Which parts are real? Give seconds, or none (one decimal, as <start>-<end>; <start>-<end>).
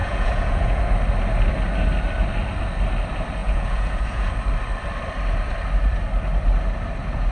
0.8-3.4; 4.3-7.3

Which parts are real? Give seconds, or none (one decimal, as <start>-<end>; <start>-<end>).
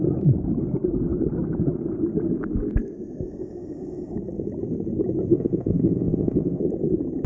0.0-5.3; 6.6-7.3